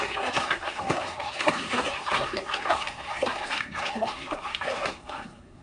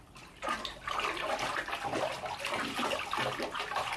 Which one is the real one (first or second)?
second